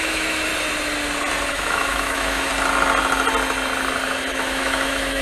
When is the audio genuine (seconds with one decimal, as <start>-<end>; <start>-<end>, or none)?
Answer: 0.5-1.5; 2.5-4.3